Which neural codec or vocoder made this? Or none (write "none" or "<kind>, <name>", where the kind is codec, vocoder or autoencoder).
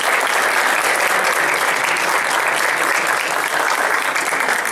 none